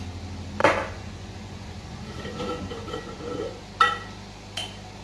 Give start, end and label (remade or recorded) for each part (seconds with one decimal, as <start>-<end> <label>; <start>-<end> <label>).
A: 0.0-0.6 recorded; 0.6-3.6 remade; 3.6-5.0 recorded